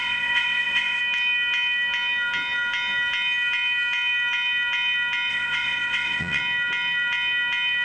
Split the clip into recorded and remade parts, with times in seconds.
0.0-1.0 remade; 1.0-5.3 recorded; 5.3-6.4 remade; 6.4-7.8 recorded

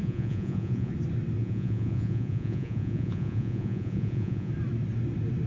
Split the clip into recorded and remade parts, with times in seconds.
0.0-0.9 remade; 0.9-1.4 recorded; 1.4-4.5 remade; 4.5-5.5 recorded

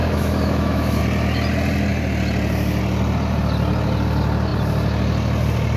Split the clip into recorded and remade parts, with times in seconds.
0.0-1.0 remade; 1.0-5.8 recorded

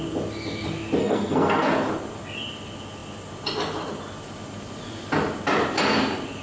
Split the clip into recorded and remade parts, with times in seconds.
0.0-1.0 recorded; 1.0-1.7 remade; 1.7-6.4 recorded